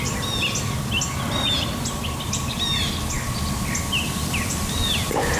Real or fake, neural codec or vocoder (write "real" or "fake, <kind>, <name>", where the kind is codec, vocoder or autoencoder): real